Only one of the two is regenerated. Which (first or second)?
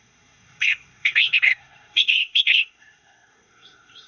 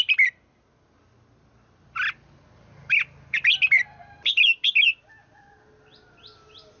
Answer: first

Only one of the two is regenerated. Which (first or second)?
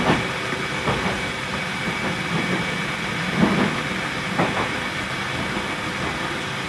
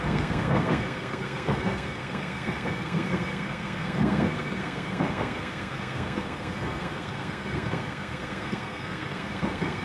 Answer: second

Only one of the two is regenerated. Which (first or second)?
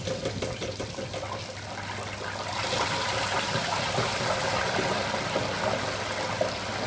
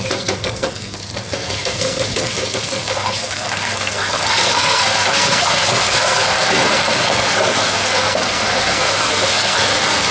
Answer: second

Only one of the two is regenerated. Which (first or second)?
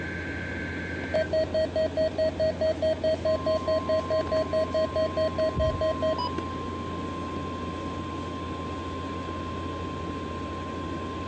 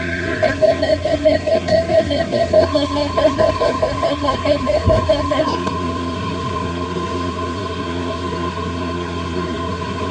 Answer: second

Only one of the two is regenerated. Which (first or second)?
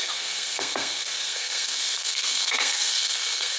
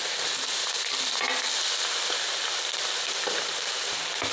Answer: first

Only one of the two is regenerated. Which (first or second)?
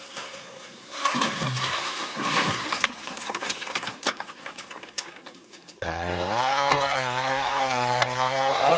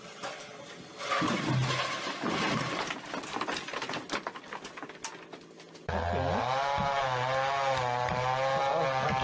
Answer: first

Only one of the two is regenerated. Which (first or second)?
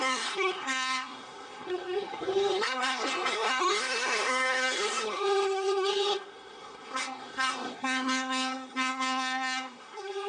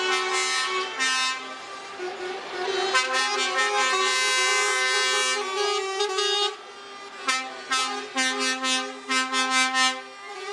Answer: first